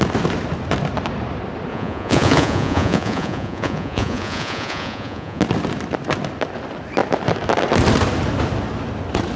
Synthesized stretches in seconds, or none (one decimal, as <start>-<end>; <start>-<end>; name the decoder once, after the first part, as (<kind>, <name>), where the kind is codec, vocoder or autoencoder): 1.7-5.4 (vocoder, Vocos)